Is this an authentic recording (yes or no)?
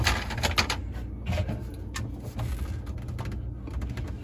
yes